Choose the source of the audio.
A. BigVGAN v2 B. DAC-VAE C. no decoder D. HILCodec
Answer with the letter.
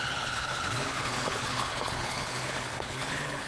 D